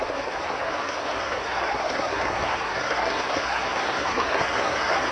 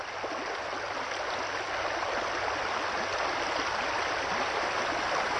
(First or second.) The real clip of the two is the second